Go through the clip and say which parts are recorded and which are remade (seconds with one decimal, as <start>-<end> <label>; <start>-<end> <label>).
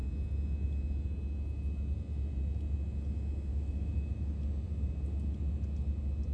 0.0-3.5 recorded; 3.5-4.4 remade; 4.4-6.3 recorded